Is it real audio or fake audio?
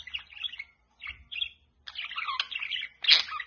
real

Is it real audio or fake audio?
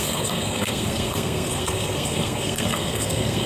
fake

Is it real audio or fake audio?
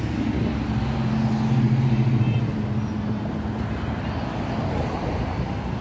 real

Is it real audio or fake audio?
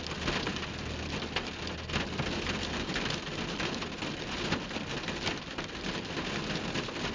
real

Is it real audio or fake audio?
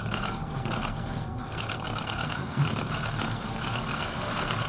fake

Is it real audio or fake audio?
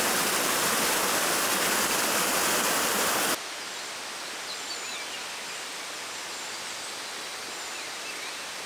real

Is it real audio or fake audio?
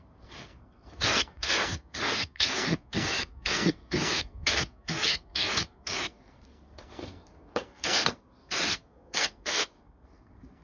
fake